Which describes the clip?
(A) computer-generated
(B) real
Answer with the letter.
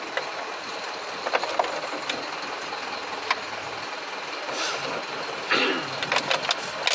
B